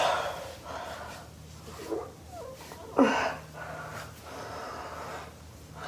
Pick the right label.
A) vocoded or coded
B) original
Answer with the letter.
B